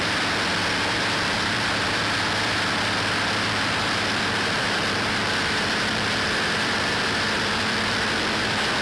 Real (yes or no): no